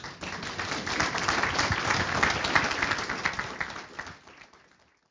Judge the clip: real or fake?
real